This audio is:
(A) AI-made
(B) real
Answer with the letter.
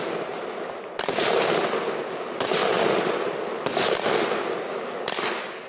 B